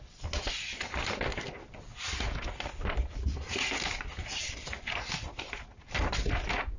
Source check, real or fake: real